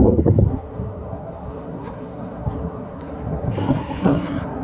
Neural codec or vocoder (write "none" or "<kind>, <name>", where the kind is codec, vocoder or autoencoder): codec, SNAC